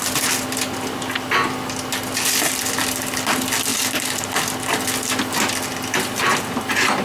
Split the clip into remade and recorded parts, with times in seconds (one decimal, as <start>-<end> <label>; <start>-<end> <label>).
0.0-7.0 recorded